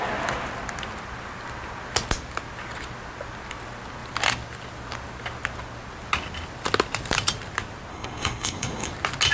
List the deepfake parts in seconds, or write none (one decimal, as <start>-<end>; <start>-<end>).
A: 7.9-8.9